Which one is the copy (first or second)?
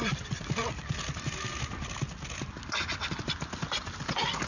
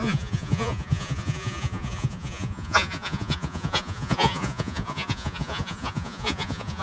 second